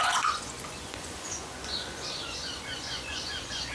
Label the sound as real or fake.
fake